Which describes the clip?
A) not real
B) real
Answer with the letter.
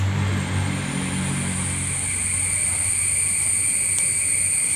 B